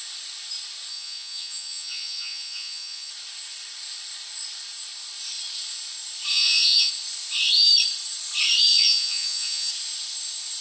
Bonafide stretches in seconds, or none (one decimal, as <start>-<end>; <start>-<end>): 0.0-0.9; 3.1-6.3; 6.9-8.7; 9.7-10.6